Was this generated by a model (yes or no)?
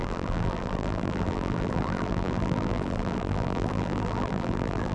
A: yes